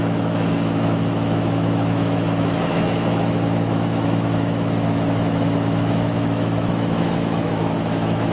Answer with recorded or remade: remade